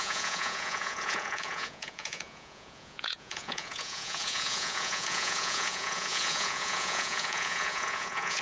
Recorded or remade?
remade